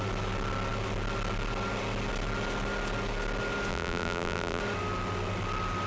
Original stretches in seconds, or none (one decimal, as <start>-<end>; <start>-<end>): 0.0-3.7; 4.6-5.9